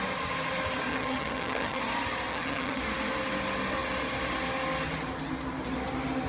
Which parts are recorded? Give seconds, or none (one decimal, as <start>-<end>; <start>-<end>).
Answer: 0.0-0.9; 1.8-2.3; 2.8-6.3